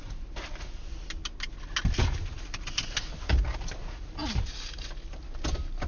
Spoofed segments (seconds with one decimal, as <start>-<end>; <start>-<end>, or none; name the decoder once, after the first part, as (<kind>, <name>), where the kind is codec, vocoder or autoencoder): none